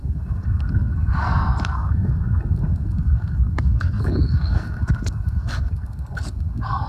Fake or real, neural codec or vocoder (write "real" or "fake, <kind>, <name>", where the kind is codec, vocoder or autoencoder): fake, codec, SNAC